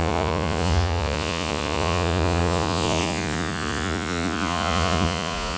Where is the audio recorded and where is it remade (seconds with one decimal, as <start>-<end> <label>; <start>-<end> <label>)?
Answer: 0.0-5.6 remade